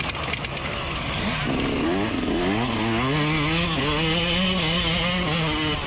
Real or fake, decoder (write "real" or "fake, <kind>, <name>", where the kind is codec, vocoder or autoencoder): real